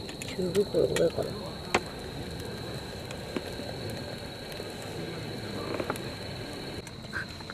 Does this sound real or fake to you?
real